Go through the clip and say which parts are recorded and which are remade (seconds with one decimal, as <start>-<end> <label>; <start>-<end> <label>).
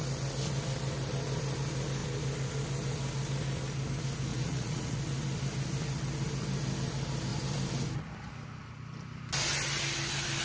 0.0-4.3 recorded; 4.3-5.0 remade; 5.0-10.4 recorded